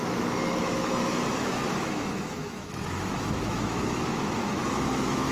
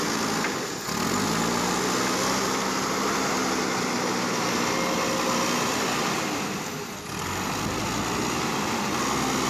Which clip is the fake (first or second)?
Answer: first